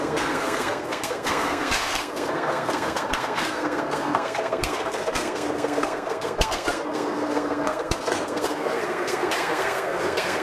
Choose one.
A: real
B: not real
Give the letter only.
B